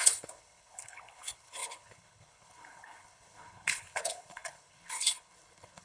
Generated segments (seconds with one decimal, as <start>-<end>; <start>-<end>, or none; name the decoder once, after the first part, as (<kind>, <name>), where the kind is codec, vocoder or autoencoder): 0.0-5.8 (codec, HILCodec)